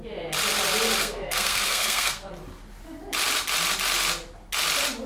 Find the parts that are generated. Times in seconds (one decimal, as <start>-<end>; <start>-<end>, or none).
1.0-2.3